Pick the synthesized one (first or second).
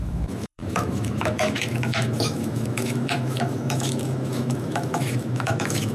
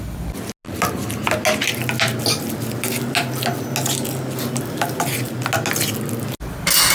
first